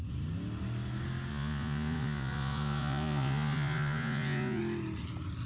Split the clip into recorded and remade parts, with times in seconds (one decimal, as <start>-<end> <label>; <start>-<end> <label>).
0.0-1.3 recorded; 1.3-4.6 remade; 4.6-5.5 recorded